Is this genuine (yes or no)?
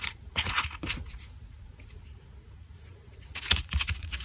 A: no